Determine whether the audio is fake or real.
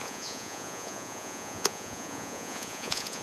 fake